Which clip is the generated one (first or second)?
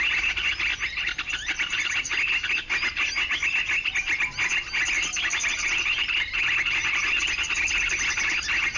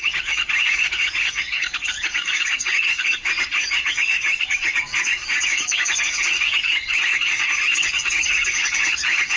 second